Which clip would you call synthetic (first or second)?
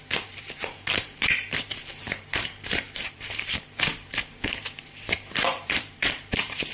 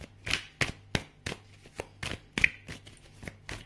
first